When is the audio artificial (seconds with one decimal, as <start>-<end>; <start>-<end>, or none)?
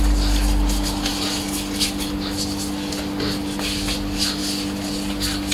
none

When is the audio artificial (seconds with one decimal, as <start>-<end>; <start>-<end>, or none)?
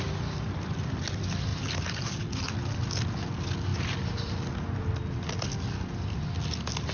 none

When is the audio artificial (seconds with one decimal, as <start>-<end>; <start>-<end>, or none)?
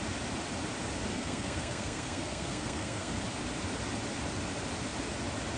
1.1-3.2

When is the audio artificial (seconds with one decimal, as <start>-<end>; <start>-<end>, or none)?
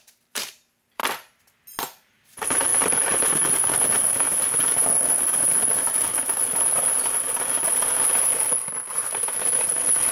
0.0-1.0; 1.8-6.1; 8.9-10.1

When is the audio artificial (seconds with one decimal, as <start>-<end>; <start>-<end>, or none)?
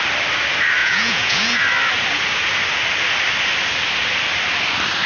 0.8-1.6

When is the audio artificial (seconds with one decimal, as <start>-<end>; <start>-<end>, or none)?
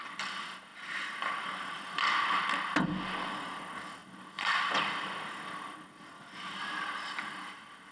none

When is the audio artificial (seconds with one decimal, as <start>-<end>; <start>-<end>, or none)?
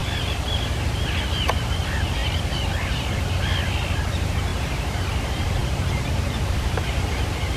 none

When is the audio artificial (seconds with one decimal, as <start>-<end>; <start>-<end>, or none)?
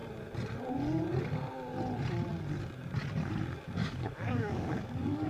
3.8-5.3